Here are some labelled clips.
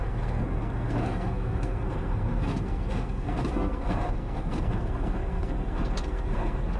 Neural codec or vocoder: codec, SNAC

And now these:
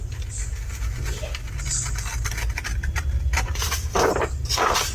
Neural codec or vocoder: none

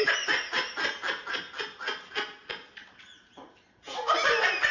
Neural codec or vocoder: none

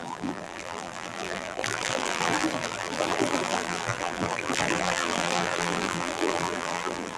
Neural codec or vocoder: vocoder, BigVGAN v2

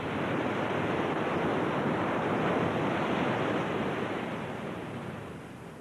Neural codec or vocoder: none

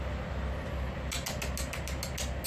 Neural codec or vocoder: none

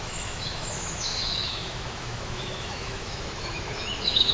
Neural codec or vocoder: autoencoder, DAC-VAE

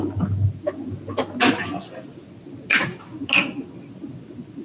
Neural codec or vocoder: none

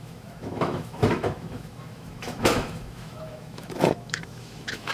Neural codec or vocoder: autoencoder, DAC-VAE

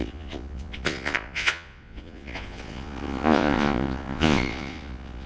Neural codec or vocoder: vocoder, Vocos